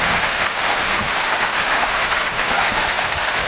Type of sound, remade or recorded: remade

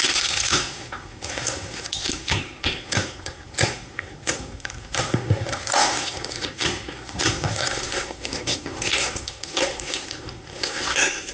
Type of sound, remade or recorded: remade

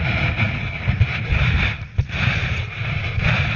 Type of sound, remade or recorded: recorded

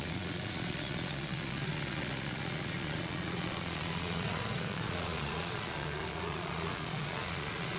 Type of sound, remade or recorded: remade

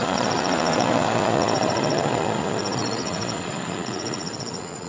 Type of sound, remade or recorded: remade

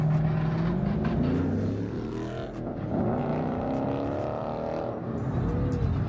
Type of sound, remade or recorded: recorded